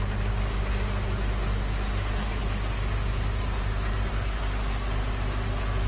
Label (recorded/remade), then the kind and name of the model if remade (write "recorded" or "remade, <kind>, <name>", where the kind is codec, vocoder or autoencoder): recorded